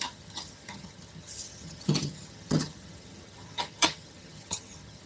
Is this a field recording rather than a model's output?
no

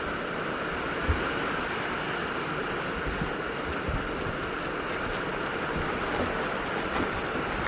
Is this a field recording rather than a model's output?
yes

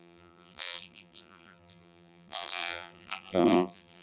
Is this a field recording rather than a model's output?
no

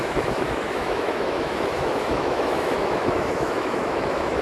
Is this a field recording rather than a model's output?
no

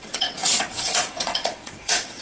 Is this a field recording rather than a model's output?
no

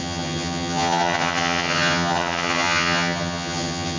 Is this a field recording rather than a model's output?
no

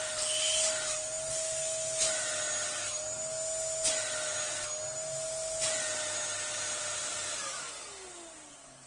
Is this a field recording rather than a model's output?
yes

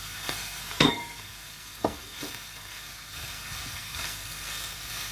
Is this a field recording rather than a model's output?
no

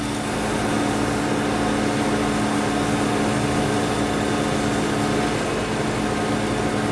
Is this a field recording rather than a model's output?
yes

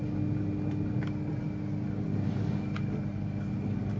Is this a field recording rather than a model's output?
yes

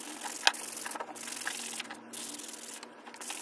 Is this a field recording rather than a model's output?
yes